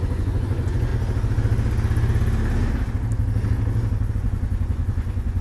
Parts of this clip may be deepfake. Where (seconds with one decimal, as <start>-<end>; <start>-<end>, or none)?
0.0-0.9; 4.1-5.4